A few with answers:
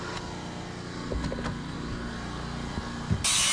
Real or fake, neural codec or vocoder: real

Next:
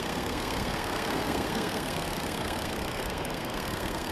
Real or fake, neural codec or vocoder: fake, codec, SNAC